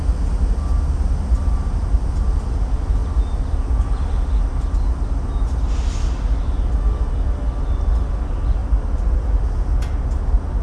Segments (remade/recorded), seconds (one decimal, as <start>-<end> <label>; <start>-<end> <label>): 0.0-10.6 recorded